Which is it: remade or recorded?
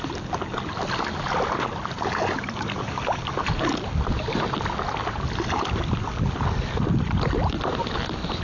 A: recorded